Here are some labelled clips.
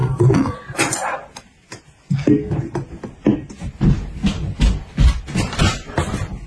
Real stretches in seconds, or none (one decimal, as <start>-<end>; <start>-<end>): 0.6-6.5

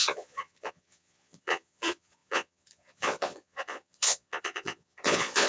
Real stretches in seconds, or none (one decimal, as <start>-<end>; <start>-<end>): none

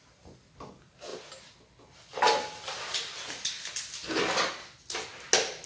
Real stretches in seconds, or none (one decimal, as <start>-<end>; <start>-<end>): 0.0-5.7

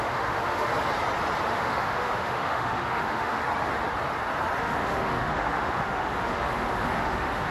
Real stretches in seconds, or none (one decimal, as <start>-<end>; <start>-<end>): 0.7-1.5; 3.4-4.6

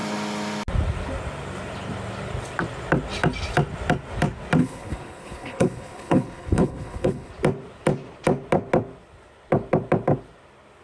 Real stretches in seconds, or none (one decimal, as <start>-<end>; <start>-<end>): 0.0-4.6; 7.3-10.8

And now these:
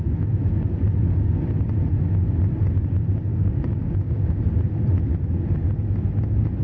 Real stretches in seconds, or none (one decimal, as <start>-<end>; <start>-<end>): 0.0-3.3; 4.4-6.6

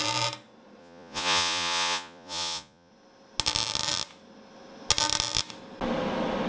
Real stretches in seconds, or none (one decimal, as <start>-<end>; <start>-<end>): 0.0-0.8; 2.9-6.5